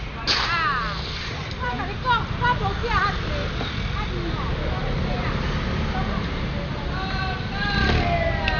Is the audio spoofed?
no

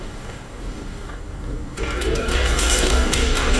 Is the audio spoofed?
yes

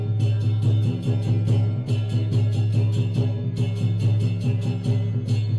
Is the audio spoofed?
no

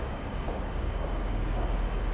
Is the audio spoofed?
yes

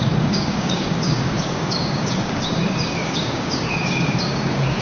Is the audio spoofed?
yes